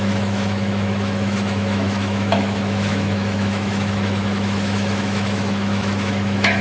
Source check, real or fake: fake